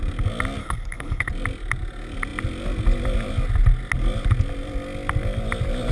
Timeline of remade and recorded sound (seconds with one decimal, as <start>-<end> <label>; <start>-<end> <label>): 0.0-0.6 recorded; 0.6-1.3 remade; 1.3-5.9 recorded